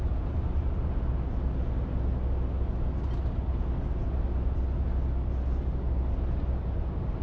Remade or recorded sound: recorded